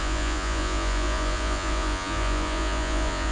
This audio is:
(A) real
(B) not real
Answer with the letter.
B